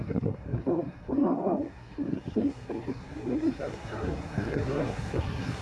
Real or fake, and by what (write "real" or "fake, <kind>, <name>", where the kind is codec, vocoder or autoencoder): fake, codec, SNAC